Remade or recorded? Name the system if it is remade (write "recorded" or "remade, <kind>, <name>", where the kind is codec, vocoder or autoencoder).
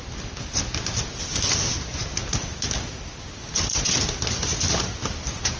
recorded